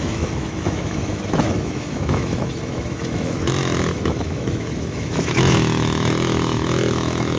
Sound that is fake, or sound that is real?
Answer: fake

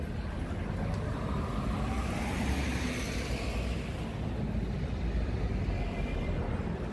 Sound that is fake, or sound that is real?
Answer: real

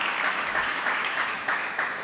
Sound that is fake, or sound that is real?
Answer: fake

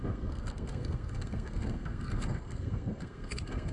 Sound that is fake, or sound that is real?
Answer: fake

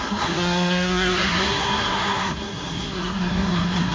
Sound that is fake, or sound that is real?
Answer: fake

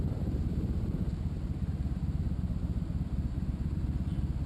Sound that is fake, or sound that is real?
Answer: real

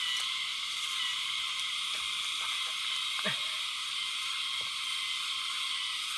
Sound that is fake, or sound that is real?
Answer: real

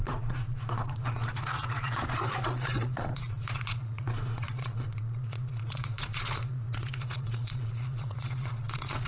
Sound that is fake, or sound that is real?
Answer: fake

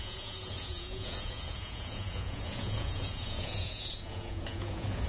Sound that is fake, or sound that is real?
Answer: fake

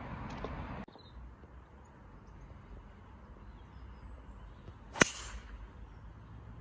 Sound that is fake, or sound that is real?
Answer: real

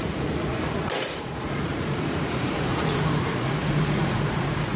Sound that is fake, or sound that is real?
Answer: fake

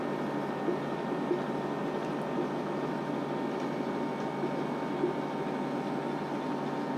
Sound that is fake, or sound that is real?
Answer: real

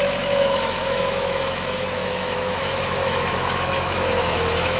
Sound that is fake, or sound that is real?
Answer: fake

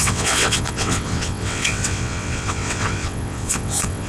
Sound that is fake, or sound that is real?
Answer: fake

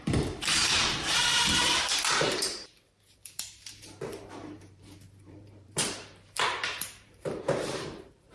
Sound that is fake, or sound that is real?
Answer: fake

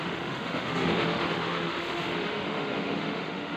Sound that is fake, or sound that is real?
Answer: fake